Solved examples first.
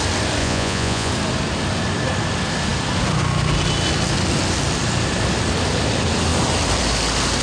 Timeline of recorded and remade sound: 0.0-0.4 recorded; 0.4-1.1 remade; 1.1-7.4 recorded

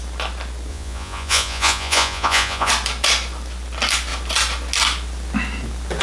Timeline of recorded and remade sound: 0.0-0.7 recorded; 0.7-2.7 remade; 2.7-6.0 recorded

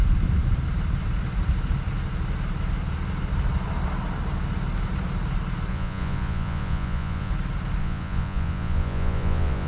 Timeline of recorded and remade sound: 0.0-5.7 recorded; 5.7-7.3 remade; 7.3-7.8 recorded; 7.8-9.7 remade

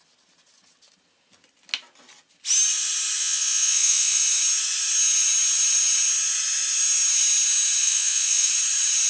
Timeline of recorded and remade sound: 0.0-3.2 recorded; 3.2-4.2 remade; 4.2-7.8 recorded; 7.8-8.5 remade; 8.5-9.1 recorded

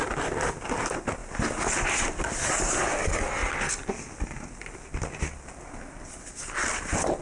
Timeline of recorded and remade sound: 0.0-7.2 recorded

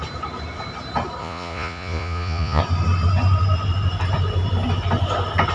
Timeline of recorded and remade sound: 0.0-1.2 recorded; 1.2-2.6 remade; 2.6-5.5 recorded

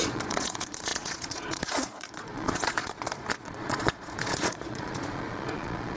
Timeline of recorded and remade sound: 0.0-6.0 remade